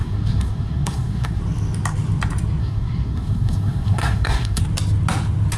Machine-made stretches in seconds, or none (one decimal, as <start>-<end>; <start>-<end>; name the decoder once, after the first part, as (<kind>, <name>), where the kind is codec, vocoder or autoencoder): 0.0-1.4 (codec, SNAC); 2.6-4.6